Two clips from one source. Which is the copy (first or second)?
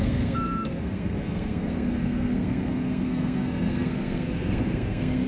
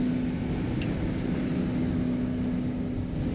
first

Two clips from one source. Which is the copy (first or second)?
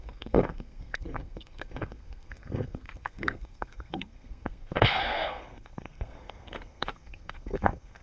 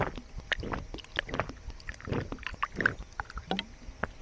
first